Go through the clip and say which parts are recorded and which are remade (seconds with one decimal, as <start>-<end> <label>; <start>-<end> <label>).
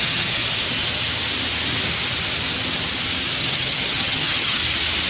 0.0-0.4 remade; 0.4-3.4 recorded; 3.4-4.6 remade; 4.6-5.1 recorded